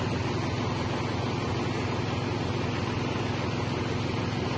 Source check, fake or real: real